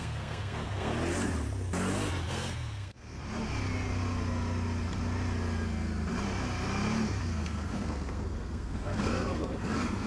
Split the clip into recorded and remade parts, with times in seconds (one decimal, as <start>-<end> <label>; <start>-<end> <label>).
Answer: 0.0-0.9 remade; 0.9-2.3 recorded; 2.3-3.2 remade; 3.2-7.2 recorded; 7.2-10.1 remade

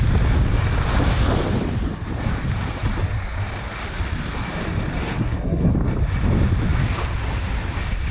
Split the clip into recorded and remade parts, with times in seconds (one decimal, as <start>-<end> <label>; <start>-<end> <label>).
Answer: 0.0-5.0 recorded; 5.0-5.7 remade; 5.7-8.1 recorded

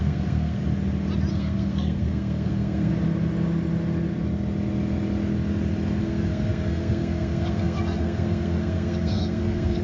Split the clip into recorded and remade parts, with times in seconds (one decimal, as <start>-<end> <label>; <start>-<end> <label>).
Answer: 0.0-0.6 remade; 0.6-1.3 recorded; 1.3-2.9 remade; 2.9-6.0 recorded; 6.0-9.8 remade